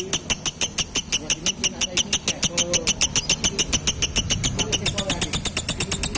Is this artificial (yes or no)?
no